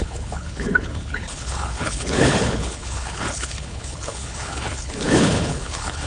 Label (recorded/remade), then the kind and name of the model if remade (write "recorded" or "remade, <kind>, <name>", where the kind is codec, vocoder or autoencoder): remade, codec, HILCodec